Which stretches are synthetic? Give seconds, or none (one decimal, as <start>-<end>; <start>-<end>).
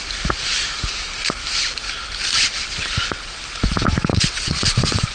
4.1-5.1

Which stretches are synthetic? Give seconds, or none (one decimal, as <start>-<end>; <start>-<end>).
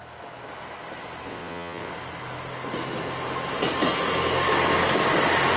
1.3-1.9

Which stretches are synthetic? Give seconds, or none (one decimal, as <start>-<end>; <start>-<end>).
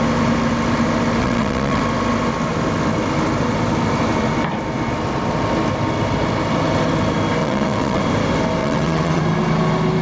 1.2-1.8; 7.4-8.0; 8.6-9.2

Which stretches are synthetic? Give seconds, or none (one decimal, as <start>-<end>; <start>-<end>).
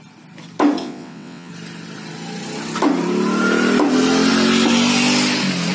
0.8-1.5